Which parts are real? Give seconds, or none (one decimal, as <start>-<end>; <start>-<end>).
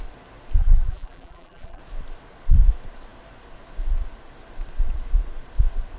0.0-0.6; 1.8-6.0